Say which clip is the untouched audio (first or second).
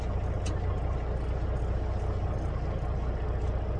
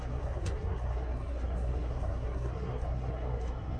first